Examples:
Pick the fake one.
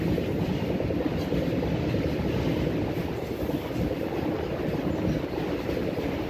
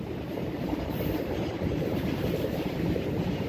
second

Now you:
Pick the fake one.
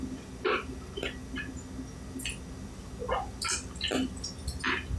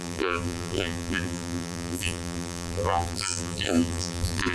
second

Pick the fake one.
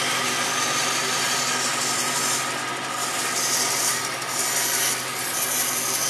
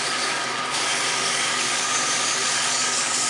second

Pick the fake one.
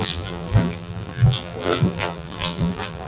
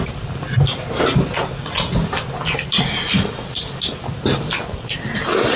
first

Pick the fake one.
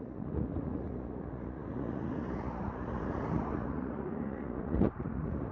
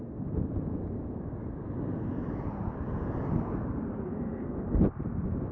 first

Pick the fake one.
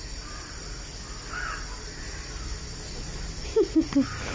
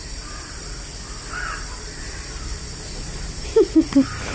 second